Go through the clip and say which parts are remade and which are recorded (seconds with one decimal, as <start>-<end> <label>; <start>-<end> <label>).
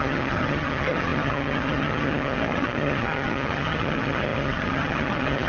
0.0-5.5 remade